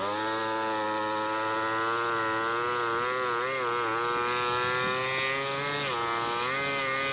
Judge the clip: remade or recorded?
recorded